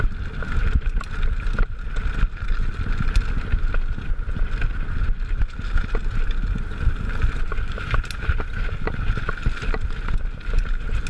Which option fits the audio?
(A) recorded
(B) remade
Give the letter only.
A